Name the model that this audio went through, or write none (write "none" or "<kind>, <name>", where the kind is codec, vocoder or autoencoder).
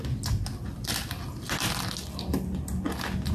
none